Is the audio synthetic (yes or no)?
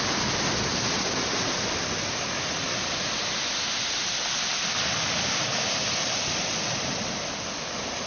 no